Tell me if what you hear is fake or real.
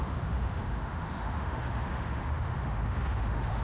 fake